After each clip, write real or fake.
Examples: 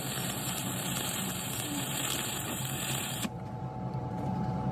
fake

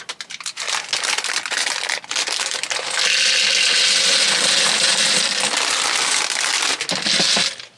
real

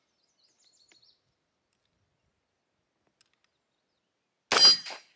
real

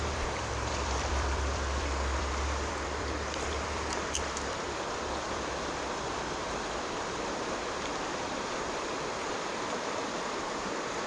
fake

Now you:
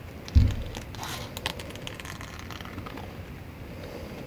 real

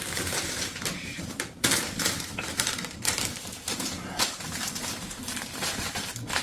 fake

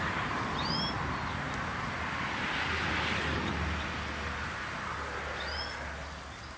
real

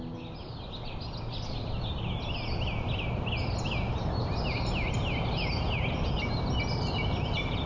real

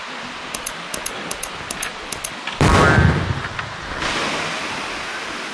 real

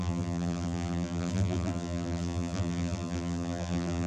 fake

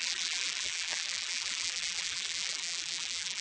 fake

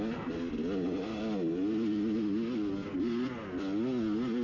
real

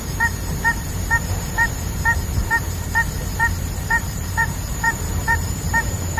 fake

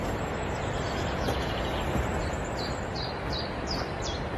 fake